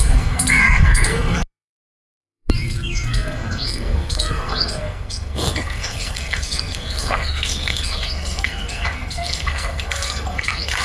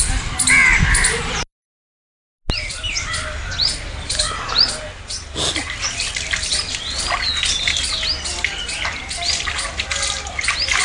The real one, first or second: second